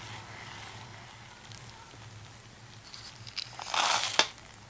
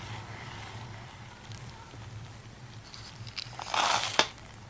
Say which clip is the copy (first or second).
second